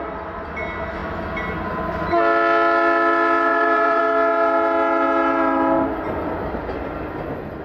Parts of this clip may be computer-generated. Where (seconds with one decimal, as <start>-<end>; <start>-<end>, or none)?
3.5-4.0